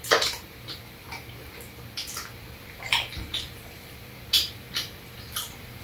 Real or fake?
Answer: fake